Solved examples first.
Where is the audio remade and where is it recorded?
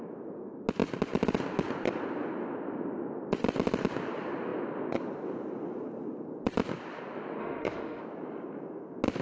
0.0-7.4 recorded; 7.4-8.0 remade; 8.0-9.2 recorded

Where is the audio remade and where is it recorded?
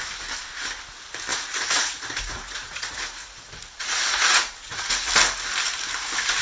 0.0-1.3 recorded; 1.3-5.1 remade; 5.1-6.4 recorded